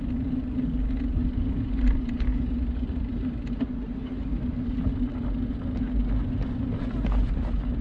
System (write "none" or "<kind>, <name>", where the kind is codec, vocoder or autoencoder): none